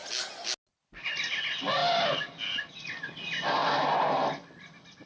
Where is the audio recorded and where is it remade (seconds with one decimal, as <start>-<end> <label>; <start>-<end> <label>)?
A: 0.0-5.1 recorded